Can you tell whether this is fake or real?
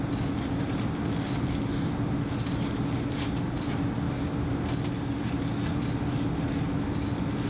real